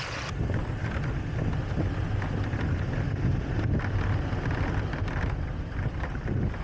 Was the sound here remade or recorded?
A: recorded